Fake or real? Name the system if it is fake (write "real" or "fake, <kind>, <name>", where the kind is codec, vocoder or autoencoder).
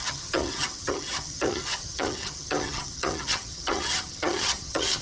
fake, vocoder, HiFi-GAN